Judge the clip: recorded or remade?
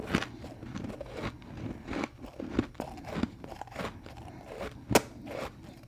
recorded